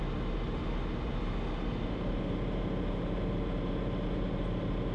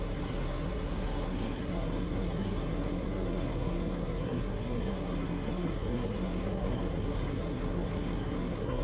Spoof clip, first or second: second